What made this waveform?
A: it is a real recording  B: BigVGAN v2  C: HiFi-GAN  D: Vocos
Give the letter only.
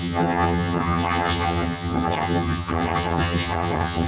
C